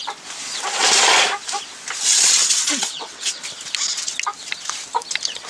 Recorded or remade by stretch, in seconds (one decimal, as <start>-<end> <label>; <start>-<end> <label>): 0.0-2.4 recorded; 2.4-3.4 remade; 3.4-5.5 recorded